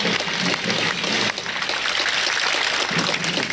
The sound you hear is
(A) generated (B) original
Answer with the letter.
B